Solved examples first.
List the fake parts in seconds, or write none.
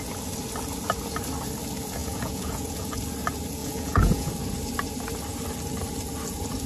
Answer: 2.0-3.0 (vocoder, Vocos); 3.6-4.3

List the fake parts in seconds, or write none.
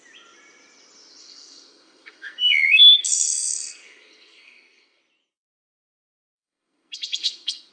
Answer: 1.2-5.0 (codec, SNAC); 5.5-7.7